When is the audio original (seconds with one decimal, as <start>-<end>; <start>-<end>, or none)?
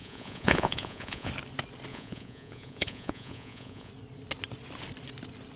1.3-1.9; 3.9-5.6